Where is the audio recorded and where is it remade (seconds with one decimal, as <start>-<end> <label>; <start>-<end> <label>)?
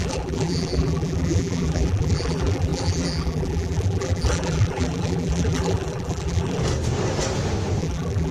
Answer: 0.0-6.6 remade; 6.6-7.8 recorded; 7.8-8.3 remade